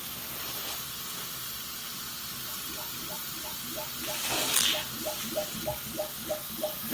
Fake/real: real